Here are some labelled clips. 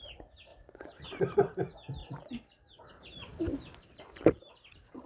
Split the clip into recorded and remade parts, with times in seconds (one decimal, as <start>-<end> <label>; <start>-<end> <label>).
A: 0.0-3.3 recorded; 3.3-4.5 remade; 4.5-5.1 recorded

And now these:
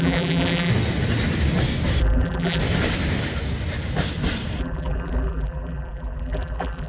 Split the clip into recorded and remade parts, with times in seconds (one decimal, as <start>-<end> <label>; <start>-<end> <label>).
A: 0.0-0.7 remade; 0.7-2.0 recorded; 2.0-2.6 remade; 2.6-4.6 recorded; 4.6-6.9 remade

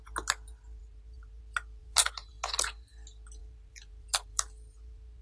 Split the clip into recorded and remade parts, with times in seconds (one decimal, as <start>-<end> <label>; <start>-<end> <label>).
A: 0.0-0.8 recorded; 0.8-1.4 remade; 1.4-1.8 recorded; 1.8-2.3 remade; 2.3-3.4 recorded; 3.4-5.2 remade

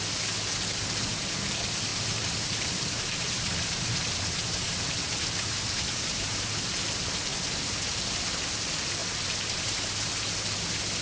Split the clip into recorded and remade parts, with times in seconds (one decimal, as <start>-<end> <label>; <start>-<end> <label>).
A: 0.0-1.9 recorded; 1.9-6.6 remade; 6.6-7.3 recorded; 7.3-8.0 remade; 8.0-9.0 recorded; 9.0-10.1 remade; 10.1-11.0 recorded

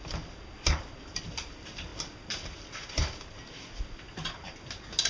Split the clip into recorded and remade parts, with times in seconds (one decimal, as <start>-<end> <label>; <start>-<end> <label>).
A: 0.0-5.1 recorded

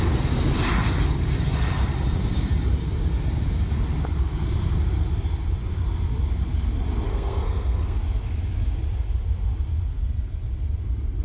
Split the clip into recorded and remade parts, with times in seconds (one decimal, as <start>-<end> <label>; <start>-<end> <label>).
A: 0.0-7.1 recorded; 7.1-8.0 remade; 8.0-11.2 recorded

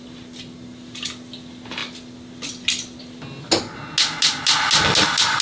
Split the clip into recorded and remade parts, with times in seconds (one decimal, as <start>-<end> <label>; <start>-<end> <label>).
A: 0.0-5.4 recorded

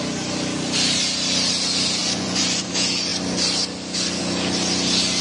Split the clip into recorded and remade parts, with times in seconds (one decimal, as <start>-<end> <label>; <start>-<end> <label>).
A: 0.0-2.0 recorded; 2.0-2.7 remade; 2.7-5.2 recorded